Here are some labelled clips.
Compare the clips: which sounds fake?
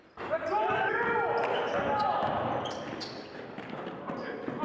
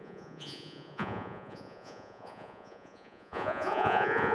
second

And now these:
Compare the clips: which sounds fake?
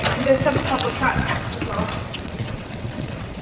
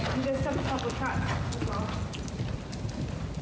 first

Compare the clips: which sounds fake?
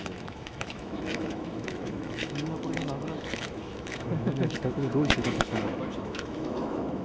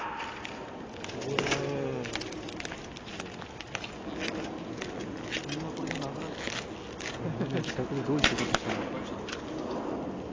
first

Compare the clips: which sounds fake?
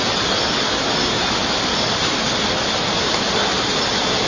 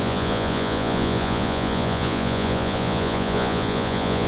second